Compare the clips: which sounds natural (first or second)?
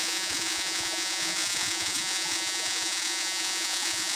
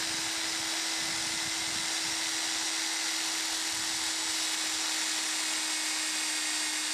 second